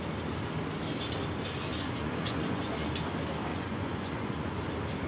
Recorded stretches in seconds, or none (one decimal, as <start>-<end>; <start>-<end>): 0.0-1.7; 2.9-3.5; 4.6-5.1

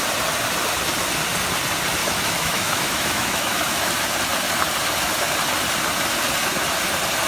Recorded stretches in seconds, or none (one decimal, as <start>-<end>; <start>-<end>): 0.0-2.0; 3.9-7.3

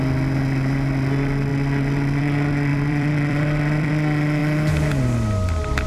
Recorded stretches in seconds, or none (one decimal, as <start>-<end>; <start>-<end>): 0.0-2.7; 3.9-5.9

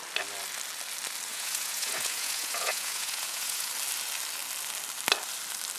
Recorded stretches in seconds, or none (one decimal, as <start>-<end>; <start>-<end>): 0.0-1.3; 3.7-5.8

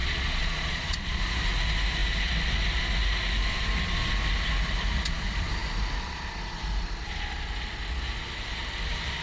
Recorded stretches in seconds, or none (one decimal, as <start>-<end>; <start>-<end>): 1.2-9.2

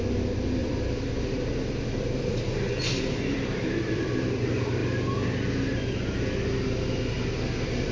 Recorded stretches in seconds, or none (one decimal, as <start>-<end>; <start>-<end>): 0.0-0.6; 4.3-7.9